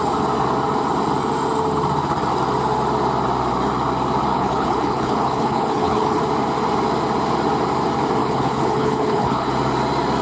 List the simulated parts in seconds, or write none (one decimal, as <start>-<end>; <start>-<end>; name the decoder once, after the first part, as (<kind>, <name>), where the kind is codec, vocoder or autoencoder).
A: 4.3-6.2 (codec, HILCodec); 8.2-9.5